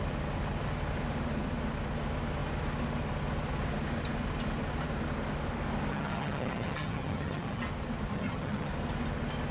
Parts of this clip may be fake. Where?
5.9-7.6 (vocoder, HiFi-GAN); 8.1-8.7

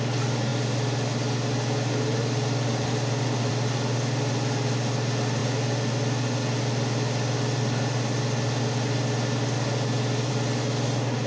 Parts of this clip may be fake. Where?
none

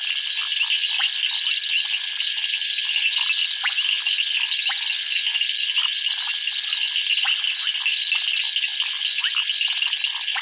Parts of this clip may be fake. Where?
none

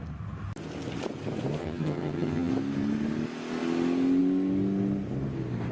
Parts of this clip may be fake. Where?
1.6-2.5 (vocoder, HiFi-GAN)

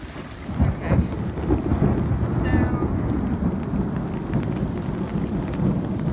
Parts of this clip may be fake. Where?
none

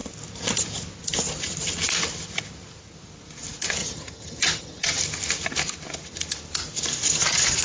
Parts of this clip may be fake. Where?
3.8-5.0 (vocoder, HiFi-GAN)